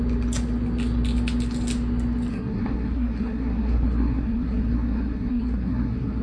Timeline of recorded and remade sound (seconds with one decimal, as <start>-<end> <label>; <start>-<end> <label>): 0.0-2.3 recorded; 2.3-6.2 remade